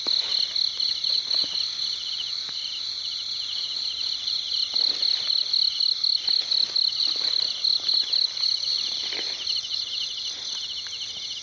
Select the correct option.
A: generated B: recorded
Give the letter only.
B